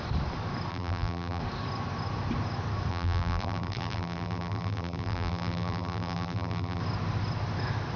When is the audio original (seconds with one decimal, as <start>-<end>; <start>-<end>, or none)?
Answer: 0.0-0.7; 1.4-2.9; 6.8-8.0